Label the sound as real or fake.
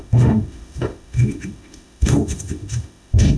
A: fake